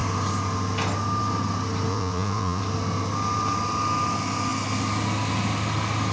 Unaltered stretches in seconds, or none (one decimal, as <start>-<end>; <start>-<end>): 0.0-1.9; 2.6-6.1